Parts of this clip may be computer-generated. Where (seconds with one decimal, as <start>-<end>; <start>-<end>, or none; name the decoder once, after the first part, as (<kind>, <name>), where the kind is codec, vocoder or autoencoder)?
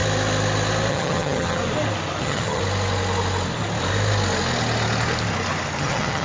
0.9-1.6 (vocoder, HiFi-GAN); 2.2-2.6; 5.8-6.2